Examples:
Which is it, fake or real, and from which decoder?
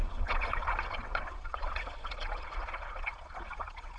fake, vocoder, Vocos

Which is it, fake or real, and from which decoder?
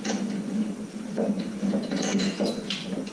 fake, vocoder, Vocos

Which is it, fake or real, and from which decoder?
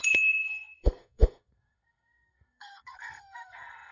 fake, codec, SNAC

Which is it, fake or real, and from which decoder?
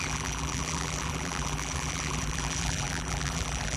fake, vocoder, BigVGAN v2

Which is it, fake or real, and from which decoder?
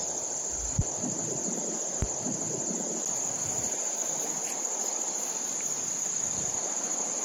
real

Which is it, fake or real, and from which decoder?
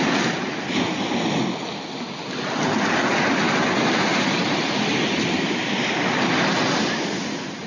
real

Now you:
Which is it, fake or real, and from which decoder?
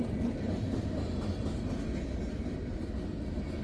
real